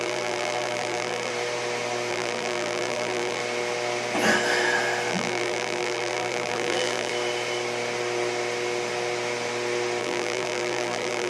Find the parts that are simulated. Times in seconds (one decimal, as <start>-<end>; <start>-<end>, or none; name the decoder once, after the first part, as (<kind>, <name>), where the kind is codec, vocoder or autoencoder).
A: 0.0-1.3 (vocoder, BigVGAN v2); 2.1-3.4; 5.1-7.1; 10.0-11.3